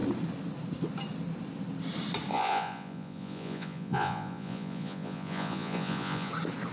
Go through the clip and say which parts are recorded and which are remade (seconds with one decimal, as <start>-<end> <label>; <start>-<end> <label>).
0.0-2.3 recorded; 2.3-6.3 remade; 6.3-6.7 recorded